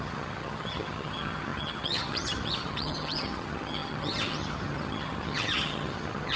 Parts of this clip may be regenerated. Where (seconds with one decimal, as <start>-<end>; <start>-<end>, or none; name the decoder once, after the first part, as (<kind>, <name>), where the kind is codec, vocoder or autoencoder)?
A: 0.0-6.4 (vocoder, HiFi-GAN)